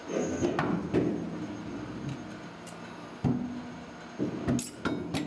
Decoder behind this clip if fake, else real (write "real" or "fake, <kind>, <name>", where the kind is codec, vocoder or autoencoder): real